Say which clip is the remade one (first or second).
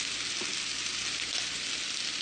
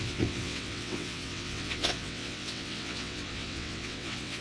second